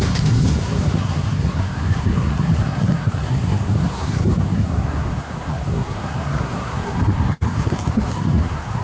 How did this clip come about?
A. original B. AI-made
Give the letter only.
B